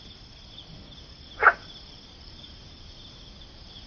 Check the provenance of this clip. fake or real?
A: real